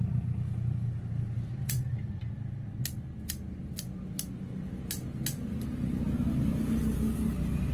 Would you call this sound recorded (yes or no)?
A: yes